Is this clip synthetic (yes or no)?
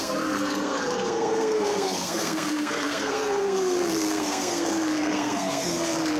yes